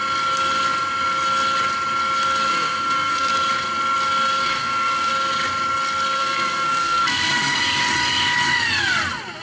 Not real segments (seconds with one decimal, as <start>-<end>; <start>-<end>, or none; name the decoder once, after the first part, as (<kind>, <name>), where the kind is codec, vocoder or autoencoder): 2.5-3.3 (codec, SNAC); 4.4-5.1; 6.2-7.6